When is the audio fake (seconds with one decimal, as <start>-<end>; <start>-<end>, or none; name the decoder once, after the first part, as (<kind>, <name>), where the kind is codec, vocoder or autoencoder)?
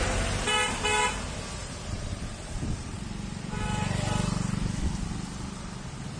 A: 1.6-3.4 (vocoder, BigVGAN v2)